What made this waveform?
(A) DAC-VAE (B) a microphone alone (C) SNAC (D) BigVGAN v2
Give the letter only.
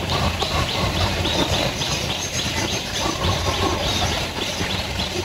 D